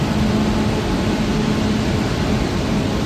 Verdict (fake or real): real